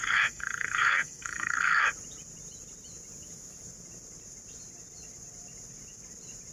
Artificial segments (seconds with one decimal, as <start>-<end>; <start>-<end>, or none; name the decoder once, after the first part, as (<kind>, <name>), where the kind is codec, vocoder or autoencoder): 0.0-1.9 (codec, SNAC)